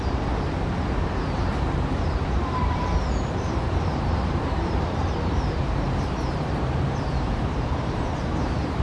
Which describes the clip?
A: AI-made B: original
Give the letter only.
A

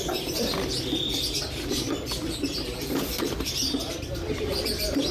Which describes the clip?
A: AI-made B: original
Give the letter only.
A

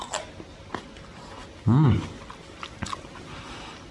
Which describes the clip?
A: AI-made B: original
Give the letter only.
B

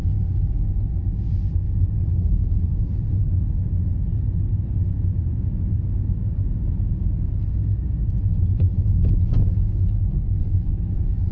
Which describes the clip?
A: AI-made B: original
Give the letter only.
B